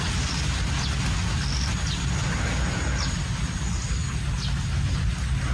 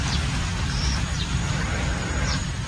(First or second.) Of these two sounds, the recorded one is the first